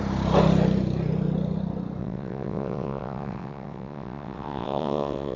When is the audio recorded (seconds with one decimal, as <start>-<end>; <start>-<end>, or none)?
0.0-2.0